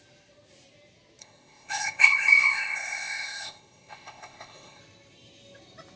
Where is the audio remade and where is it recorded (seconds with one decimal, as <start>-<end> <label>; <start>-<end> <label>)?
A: 0.0-1.2 recorded; 1.2-4.8 remade; 4.8-6.0 recorded